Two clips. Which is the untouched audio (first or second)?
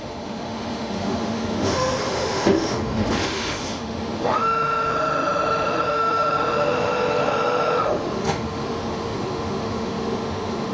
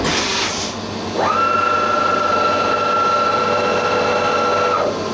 second